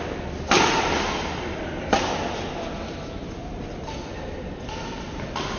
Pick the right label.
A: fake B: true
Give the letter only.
B